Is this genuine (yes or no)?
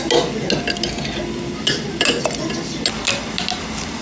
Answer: yes